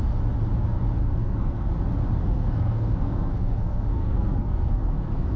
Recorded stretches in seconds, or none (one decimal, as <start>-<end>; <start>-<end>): 0.0-1.0; 1.7-2.2